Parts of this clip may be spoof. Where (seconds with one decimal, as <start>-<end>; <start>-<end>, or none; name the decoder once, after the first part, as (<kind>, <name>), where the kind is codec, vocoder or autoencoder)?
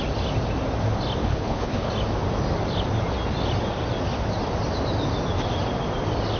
1.2-1.9 (codec, HILCodec)